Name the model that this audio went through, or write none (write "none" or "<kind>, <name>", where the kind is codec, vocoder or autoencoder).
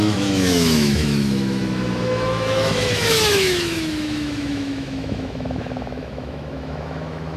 autoencoder, DAC-VAE